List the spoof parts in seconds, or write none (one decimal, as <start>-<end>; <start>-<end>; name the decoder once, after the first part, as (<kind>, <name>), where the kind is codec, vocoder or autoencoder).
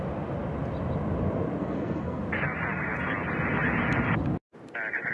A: 1.6-2.2 (codec, SNAC)